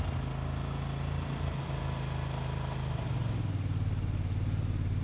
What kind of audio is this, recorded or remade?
recorded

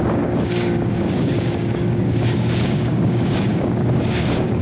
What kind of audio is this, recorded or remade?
remade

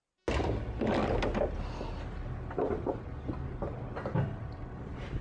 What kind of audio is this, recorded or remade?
recorded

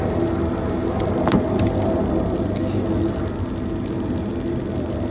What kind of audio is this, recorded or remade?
recorded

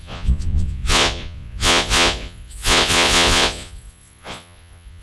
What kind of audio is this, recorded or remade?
remade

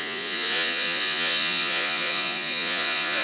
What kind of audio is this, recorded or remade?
remade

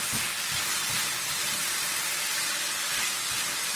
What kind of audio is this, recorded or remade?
recorded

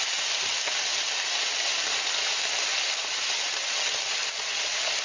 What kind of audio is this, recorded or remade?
recorded